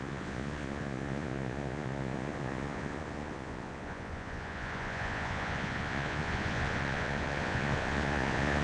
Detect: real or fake fake